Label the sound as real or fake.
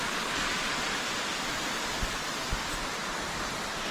real